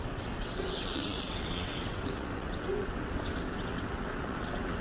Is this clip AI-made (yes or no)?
yes